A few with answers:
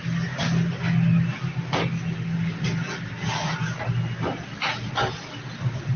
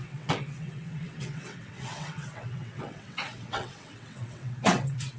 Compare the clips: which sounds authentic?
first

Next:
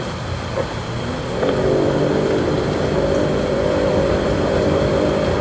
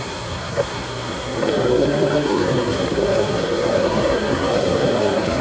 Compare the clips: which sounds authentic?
first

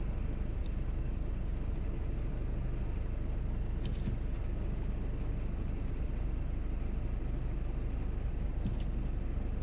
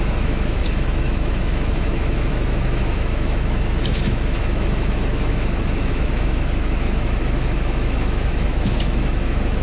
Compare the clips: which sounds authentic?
first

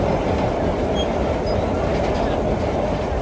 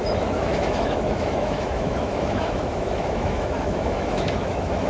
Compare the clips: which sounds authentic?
first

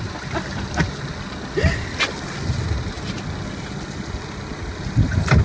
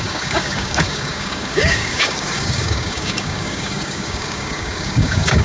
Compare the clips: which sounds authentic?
first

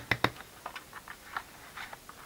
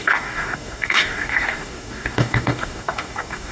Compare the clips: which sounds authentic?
first